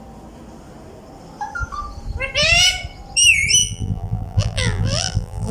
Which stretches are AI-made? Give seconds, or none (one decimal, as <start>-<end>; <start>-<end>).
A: 3.6-5.5